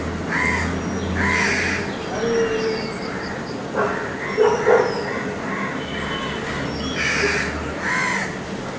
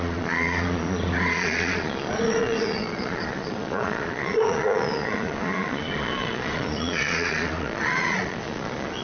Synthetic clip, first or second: second